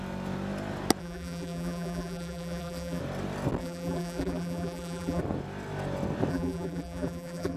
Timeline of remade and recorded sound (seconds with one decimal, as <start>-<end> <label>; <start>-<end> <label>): 0.0-1.0 recorded; 1.0-3.0 remade; 3.0-3.6 recorded; 3.6-5.2 remade; 5.2-6.3 recorded; 6.3-7.6 remade